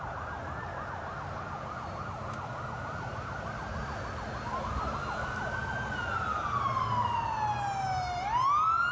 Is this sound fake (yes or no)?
no